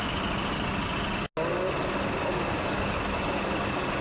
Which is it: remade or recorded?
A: recorded